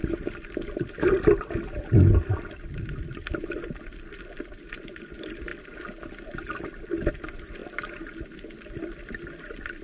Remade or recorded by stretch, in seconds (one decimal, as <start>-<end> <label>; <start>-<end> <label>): 0.0-9.8 recorded